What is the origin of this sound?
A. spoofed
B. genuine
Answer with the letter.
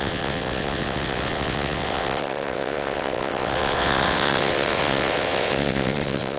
A